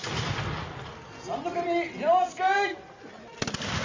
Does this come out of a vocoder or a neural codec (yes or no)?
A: no